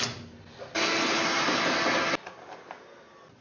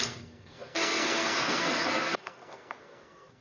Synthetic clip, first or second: second